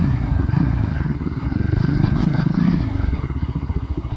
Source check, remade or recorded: remade